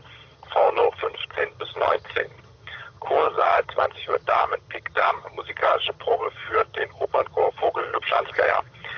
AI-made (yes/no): yes